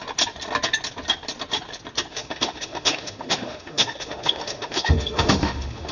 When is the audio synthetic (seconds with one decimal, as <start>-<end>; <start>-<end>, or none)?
2.1-5.9